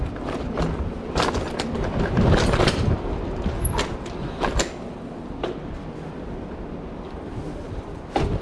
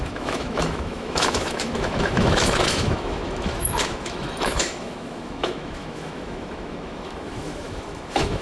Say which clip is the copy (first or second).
second